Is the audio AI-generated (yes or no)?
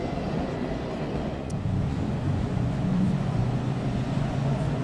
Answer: yes